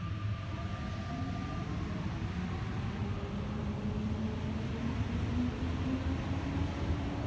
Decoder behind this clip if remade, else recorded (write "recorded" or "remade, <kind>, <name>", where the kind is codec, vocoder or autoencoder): recorded